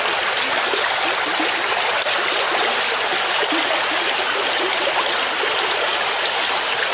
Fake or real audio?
fake